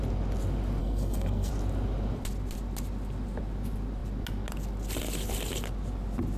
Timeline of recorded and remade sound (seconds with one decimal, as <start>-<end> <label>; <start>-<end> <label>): 0.0-0.8 recorded; 0.8-1.5 remade; 1.5-6.4 recorded